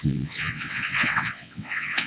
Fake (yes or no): yes